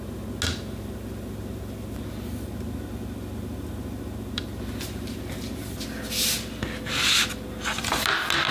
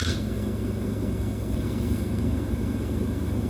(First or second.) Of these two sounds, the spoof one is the second